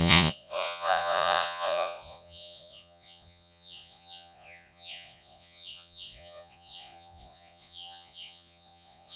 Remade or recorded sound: remade